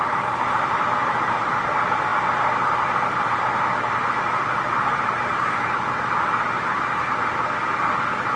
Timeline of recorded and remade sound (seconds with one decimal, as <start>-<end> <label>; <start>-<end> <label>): 0.0-8.4 recorded